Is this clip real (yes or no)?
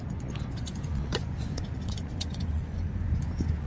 no